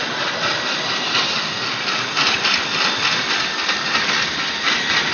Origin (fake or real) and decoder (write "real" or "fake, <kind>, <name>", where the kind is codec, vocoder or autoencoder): real